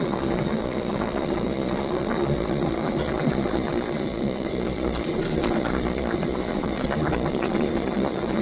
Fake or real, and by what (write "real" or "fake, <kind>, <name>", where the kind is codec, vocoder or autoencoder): fake, vocoder, Vocos